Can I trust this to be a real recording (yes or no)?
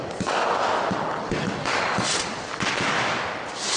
yes